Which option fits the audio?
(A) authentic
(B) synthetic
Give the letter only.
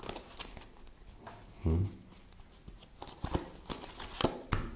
A